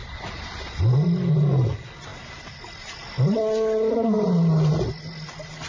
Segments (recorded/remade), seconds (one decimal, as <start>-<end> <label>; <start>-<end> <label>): 0.0-0.8 remade; 0.8-5.7 recorded